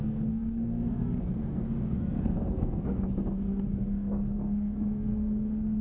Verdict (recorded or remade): remade